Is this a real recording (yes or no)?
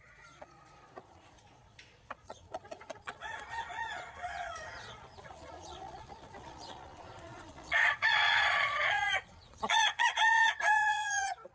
no